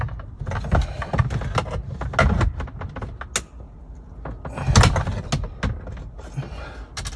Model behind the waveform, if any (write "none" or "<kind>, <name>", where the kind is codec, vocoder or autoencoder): none